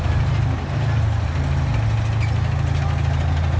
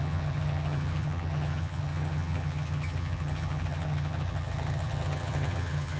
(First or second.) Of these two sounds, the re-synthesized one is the second